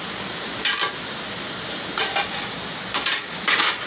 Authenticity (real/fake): real